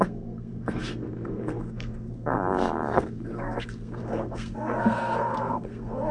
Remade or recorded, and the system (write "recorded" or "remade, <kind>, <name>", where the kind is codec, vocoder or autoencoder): remade, codec, SNAC